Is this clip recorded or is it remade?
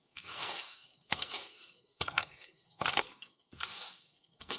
remade